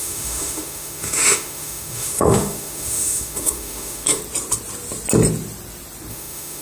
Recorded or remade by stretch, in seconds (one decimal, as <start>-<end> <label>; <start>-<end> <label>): 0.0-4.2 remade; 4.2-6.1 recorded; 6.1-6.6 remade